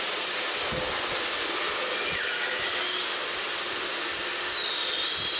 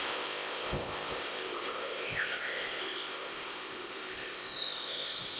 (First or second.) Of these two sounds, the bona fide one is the first